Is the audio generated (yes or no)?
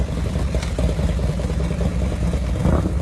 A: no